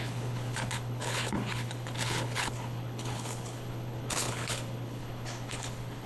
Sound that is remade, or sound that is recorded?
remade